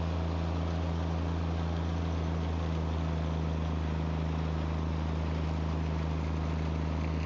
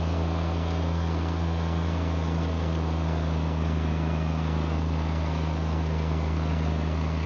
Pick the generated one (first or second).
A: second